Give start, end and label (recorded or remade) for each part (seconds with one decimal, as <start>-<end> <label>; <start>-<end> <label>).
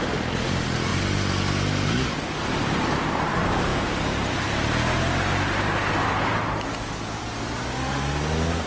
0.0-8.7 recorded